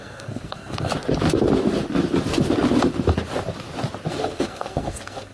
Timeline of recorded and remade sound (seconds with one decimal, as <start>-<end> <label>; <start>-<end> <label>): 0.0-0.9 remade; 0.9-4.1 recorded; 4.1-5.3 remade